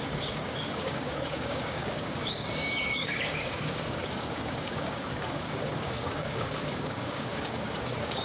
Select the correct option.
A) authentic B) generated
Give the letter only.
B